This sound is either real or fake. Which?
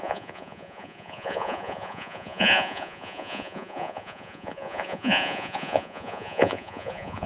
fake